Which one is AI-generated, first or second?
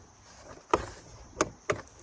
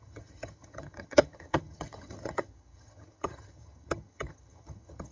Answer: second